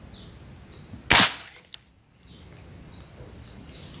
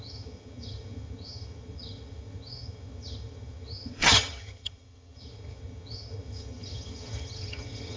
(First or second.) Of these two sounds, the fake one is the second